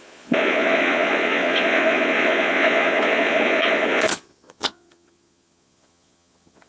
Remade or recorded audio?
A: remade